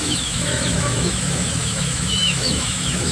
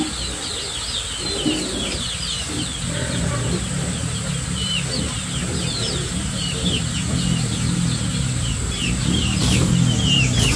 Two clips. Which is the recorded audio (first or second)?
second